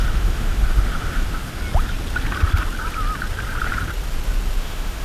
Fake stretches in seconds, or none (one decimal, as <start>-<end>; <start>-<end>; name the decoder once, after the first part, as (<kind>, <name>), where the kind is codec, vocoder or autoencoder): 0.0-1.6 (autoencoder, DAC-VAE); 4.6-5.0